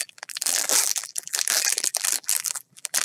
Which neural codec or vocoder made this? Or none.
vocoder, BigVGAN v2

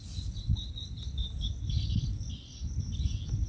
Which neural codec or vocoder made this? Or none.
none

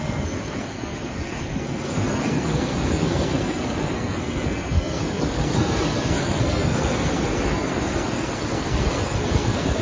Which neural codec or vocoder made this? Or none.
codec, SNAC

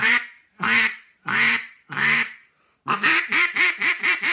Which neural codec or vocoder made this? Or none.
vocoder, BigVGAN v2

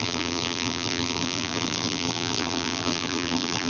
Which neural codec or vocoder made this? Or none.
vocoder, BigVGAN v2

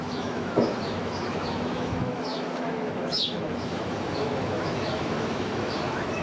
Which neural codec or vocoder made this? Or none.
autoencoder, DAC-VAE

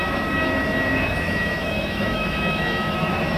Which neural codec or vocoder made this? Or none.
autoencoder, DAC-VAE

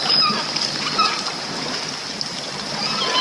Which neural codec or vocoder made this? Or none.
none